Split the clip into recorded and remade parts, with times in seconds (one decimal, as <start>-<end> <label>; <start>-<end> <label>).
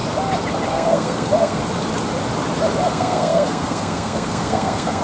0.0-0.7 recorded; 0.7-1.6 remade; 1.6-2.9 recorded; 2.9-5.0 remade